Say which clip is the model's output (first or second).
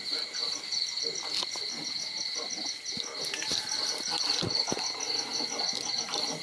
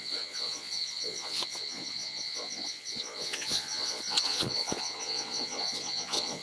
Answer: second